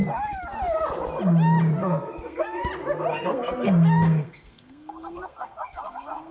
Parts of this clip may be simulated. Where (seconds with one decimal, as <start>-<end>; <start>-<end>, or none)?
1.8-2.7; 3.1-6.3